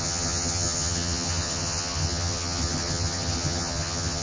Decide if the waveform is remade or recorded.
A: remade